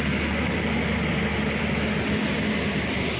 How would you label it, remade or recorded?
recorded